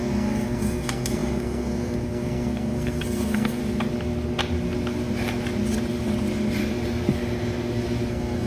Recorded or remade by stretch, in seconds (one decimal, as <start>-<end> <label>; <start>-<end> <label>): 0.0-3.6 remade; 3.6-8.1 recorded; 8.1-8.5 remade